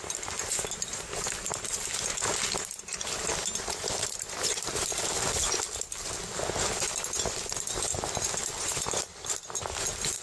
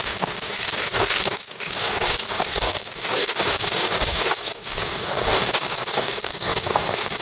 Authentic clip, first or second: first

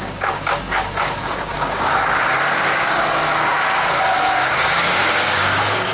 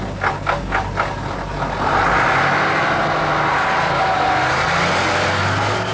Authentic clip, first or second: second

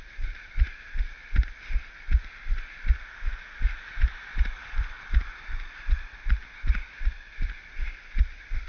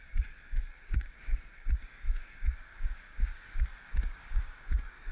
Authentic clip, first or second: first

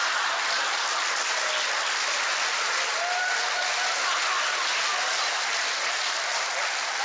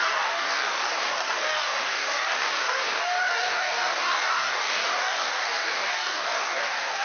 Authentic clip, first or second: first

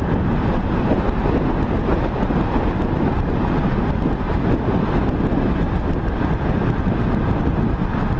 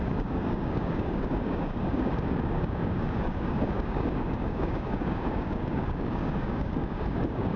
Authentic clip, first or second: first